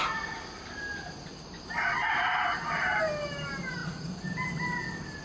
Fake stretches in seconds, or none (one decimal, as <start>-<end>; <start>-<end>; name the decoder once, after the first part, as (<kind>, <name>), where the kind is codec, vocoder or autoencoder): none